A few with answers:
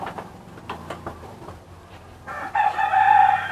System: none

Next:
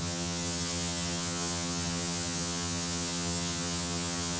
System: vocoder, HiFi-GAN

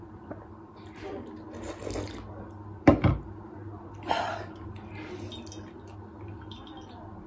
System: none